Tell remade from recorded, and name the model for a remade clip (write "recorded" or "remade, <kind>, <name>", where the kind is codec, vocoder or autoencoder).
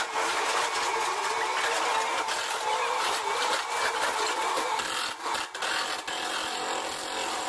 recorded